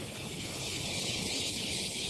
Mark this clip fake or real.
fake